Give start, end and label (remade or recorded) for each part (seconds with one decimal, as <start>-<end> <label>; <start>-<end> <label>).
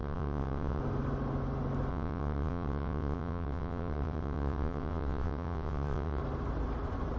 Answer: 0.0-0.8 remade; 0.8-1.9 recorded; 1.9-6.2 remade; 6.2-7.2 recorded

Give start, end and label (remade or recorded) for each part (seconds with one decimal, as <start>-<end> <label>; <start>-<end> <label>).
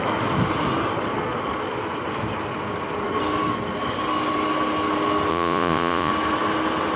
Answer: 0.0-5.3 recorded; 5.3-6.1 remade; 6.1-7.0 recorded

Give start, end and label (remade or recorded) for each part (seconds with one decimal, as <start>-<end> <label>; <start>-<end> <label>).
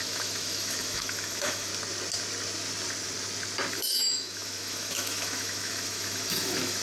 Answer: 0.0-1.7 remade; 1.7-3.7 recorded; 3.7-6.8 remade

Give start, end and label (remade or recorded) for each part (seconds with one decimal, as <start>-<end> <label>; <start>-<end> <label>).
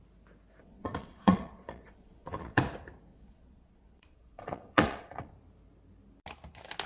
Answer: 0.0-0.6 recorded; 0.6-2.6 remade; 2.6-3.1 recorded; 3.1-5.3 remade; 5.3-6.9 recorded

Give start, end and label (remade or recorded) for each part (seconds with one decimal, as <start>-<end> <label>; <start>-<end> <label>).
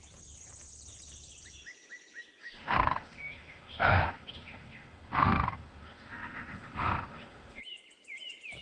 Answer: 0.0-2.4 recorded; 2.4-7.6 remade; 7.6-8.6 recorded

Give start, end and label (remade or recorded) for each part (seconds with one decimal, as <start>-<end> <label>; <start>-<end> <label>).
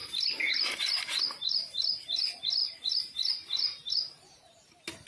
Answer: 0.0-5.1 recorded